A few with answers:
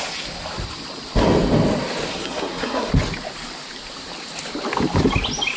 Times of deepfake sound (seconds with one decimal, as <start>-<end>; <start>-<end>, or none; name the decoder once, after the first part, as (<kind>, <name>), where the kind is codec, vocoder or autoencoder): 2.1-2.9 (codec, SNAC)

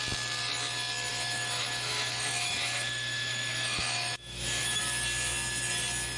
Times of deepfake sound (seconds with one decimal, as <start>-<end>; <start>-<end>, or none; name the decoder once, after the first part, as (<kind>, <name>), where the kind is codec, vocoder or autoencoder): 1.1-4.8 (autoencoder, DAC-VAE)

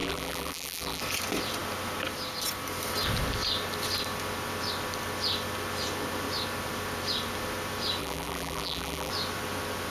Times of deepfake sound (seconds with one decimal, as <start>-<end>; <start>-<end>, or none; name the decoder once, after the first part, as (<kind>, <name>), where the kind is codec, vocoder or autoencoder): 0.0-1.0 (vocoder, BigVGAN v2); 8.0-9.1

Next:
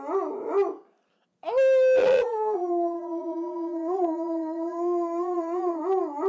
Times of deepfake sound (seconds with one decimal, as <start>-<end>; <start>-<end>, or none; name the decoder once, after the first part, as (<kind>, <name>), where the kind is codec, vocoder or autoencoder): 2.0-5.8 (vocoder, Vocos)